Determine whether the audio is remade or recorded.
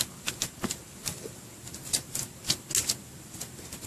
recorded